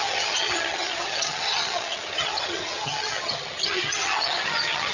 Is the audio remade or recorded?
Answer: remade